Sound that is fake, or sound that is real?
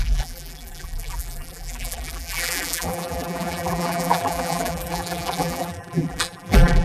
fake